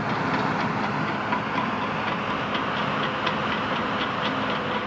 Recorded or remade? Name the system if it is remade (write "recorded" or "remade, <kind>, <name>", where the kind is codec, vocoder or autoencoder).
recorded